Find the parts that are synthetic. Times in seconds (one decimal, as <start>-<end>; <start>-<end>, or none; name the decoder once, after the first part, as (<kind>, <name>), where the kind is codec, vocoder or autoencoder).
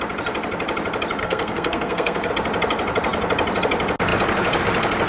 1.2-2.3 (codec, SNAC)